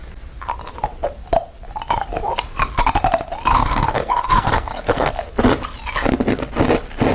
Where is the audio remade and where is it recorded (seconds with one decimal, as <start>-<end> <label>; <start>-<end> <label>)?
0.0-3.5 recorded; 3.5-5.1 remade; 5.1-7.1 recorded